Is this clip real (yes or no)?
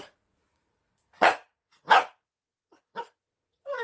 no